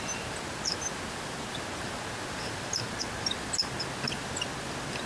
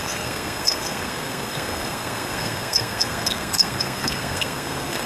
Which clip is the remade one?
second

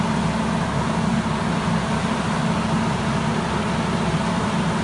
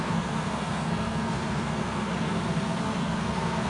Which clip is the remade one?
second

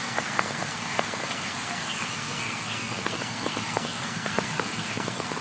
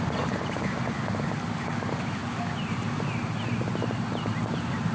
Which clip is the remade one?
first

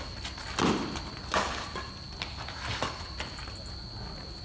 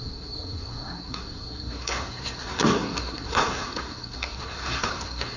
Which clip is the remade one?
second